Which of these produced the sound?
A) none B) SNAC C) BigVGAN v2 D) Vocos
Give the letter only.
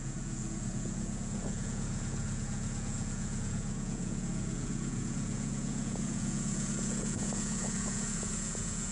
D